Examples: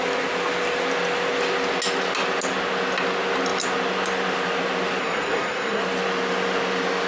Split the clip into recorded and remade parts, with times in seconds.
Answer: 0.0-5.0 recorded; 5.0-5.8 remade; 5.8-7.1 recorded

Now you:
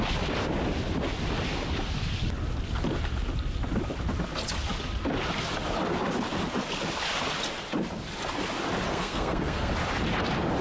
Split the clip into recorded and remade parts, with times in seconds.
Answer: 0.0-8.9 recorded; 8.9-9.7 remade; 9.7-10.6 recorded

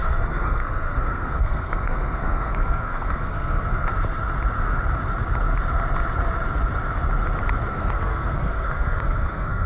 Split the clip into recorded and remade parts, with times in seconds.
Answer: 0.0-3.9 remade; 3.9-7.7 recorded; 7.7-9.7 remade

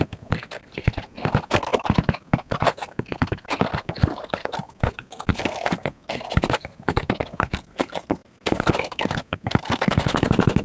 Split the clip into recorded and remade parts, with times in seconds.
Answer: 0.0-10.6 remade